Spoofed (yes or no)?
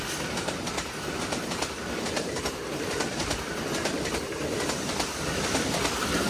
no